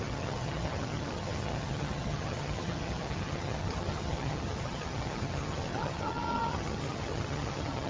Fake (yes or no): yes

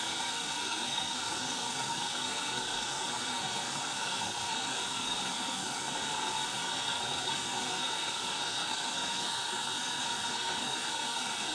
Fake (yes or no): yes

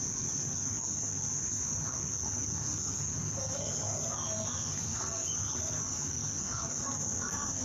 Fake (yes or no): yes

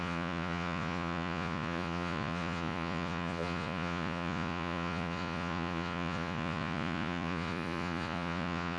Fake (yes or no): yes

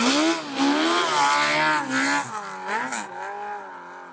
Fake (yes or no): no